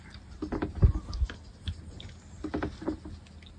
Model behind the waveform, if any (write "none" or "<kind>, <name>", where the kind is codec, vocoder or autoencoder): none